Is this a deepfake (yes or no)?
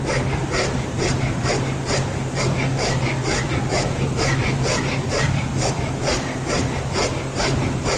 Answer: no